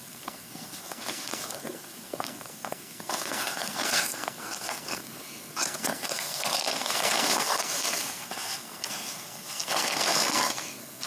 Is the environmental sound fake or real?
fake